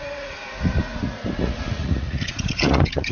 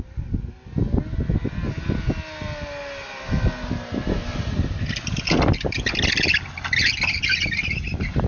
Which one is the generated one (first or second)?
first